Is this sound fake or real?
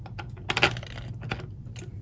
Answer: real